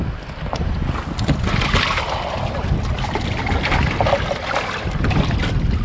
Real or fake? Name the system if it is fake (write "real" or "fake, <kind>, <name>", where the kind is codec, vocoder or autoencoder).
real